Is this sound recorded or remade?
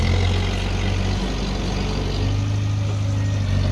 recorded